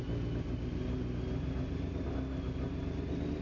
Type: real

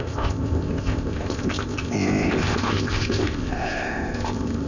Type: fake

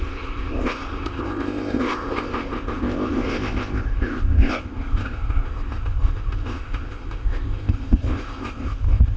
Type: fake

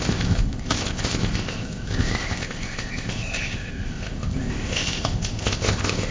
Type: fake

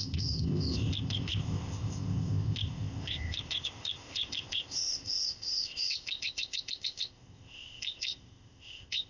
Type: fake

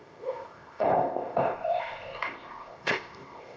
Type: fake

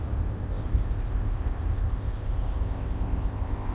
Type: fake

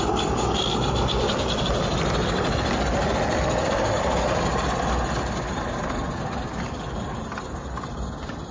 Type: real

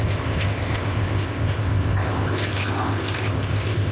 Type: fake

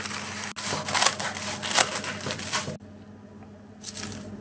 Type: real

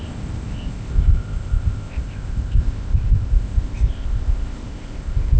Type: fake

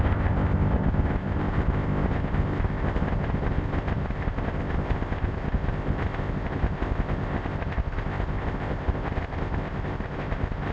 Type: fake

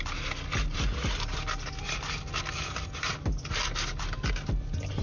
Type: real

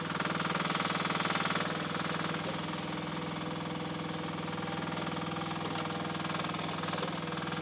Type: real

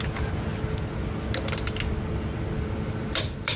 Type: real